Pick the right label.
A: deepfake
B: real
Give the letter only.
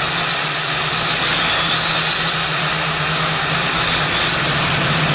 B